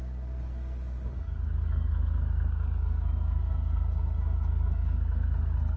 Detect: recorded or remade remade